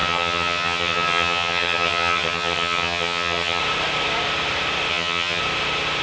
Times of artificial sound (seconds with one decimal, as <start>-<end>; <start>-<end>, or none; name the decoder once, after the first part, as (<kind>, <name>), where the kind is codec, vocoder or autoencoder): 0.0-3.6 (vocoder, HiFi-GAN); 4.9-5.4